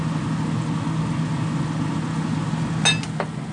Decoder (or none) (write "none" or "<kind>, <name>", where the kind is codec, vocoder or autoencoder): none